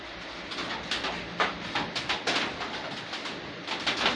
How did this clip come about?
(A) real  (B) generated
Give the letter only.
A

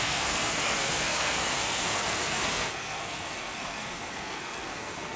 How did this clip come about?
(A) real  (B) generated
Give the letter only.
B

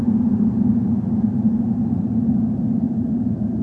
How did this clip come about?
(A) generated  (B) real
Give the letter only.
B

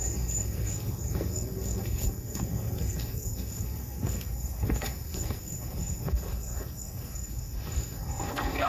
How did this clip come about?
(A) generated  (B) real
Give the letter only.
A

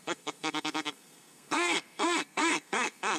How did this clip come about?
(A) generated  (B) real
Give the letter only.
A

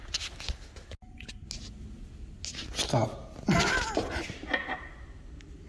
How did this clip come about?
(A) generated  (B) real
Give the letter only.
B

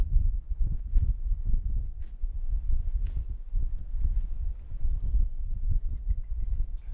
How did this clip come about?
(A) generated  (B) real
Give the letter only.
B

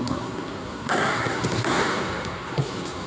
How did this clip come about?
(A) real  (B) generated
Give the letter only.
B